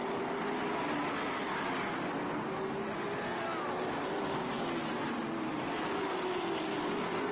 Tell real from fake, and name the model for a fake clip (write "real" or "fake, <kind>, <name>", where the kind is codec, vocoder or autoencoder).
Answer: real